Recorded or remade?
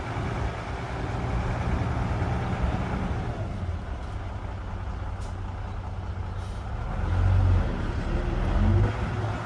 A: recorded